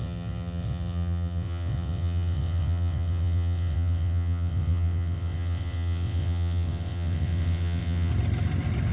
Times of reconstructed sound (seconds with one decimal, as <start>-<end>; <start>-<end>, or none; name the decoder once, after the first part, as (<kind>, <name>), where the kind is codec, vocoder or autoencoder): 0.0-8.1 (vocoder, WaveNeXt)